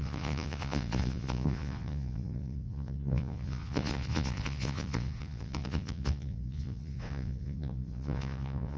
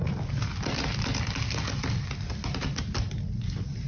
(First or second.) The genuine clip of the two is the second